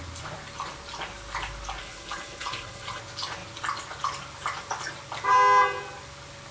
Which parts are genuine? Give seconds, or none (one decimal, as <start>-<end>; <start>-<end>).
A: 0.0-1.8; 3.0-6.5